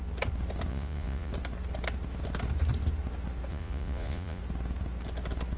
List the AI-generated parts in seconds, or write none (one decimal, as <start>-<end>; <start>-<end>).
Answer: 0.7-1.3; 3.5-4.4